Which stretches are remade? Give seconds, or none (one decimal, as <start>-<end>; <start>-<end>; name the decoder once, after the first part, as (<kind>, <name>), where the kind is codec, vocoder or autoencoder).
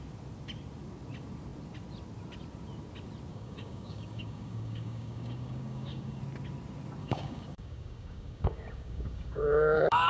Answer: 3.3-6.2 (codec, DAC); 7.0-10.1